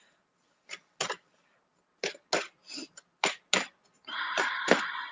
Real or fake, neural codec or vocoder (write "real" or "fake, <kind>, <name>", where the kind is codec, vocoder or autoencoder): real